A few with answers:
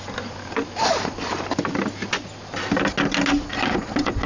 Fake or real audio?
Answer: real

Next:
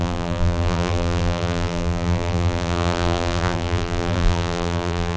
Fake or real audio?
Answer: fake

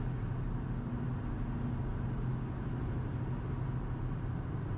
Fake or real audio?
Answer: real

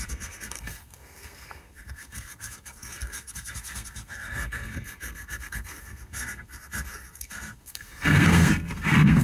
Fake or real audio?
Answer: fake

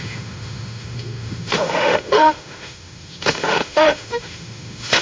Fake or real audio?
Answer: fake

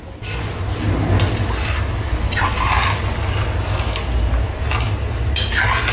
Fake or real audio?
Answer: real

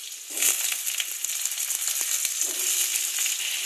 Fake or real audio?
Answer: real